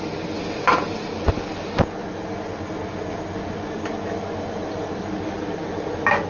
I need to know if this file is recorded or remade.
recorded